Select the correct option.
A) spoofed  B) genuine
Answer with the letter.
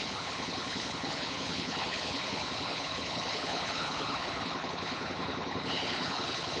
A